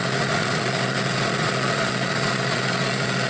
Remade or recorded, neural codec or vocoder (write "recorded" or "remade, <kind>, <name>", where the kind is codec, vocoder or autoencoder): remade, vocoder, Vocos